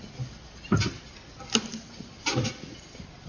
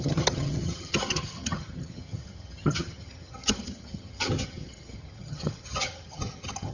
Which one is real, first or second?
first